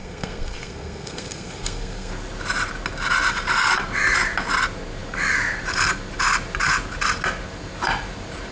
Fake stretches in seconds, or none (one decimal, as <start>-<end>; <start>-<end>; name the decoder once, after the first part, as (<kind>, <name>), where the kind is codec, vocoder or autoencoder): 0.0-2.1 (codec, SNAC)